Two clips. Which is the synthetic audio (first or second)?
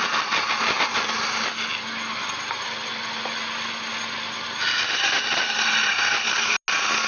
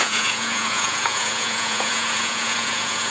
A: second